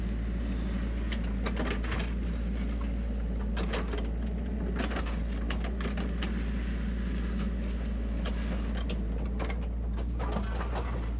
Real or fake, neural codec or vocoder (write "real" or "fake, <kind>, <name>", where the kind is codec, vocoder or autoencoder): real